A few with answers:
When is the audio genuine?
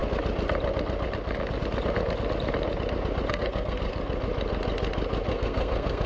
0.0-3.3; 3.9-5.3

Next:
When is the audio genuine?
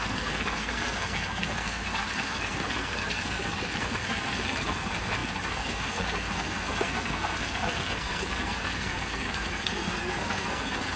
none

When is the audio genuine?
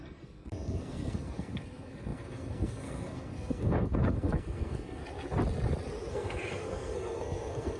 5.0-6.1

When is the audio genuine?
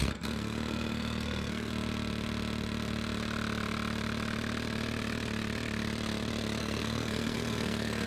1.7-6.6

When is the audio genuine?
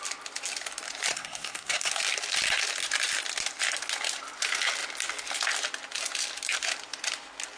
0.0-1.1; 1.9-7.6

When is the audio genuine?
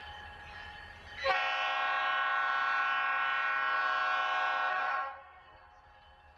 0.0-4.7; 5.6-6.4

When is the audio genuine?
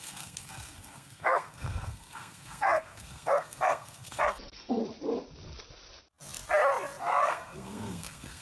4.8-7.0